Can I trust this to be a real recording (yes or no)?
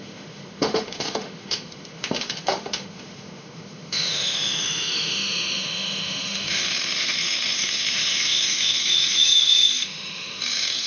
no